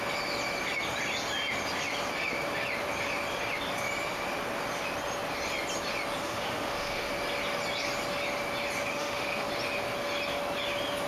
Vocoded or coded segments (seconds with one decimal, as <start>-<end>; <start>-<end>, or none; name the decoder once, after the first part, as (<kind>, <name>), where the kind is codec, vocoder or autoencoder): 6.2-7.1 (autoencoder, DAC-VAE); 8.9-9.5